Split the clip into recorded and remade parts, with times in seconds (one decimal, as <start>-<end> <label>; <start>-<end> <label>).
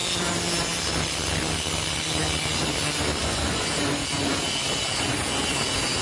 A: 0.0-3.2 recorded; 3.2-3.7 remade; 3.7-6.0 recorded